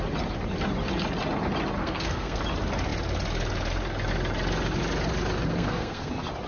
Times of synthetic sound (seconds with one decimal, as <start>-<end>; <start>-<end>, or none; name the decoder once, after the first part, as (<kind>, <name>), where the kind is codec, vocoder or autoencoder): 1.8-2.4 (codec, SNAC); 5.5-6.1